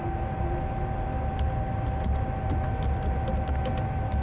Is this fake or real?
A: real